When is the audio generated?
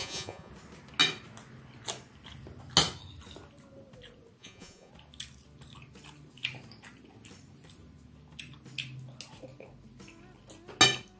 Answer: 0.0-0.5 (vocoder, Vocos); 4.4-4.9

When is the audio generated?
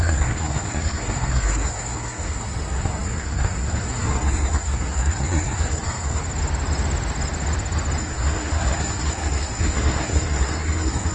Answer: 0.0-6.2 (codec, SNAC); 8.0-11.1